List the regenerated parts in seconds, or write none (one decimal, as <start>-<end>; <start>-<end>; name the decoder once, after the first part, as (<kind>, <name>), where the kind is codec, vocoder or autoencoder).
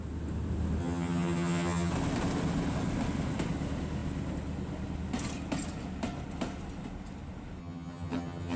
0.8-1.9 (vocoder, HiFi-GAN); 7.6-8.6